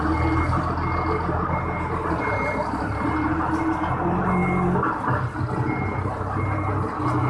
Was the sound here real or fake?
real